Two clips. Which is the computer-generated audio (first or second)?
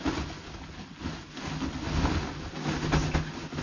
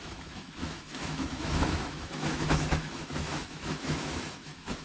second